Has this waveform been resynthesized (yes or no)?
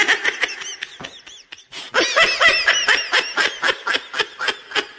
no